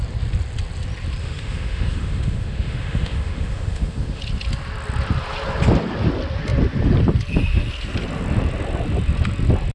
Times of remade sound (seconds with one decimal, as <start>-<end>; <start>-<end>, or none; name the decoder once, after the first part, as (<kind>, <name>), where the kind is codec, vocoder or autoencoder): 1.2-4.2 (autoencoder, DAC-VAE)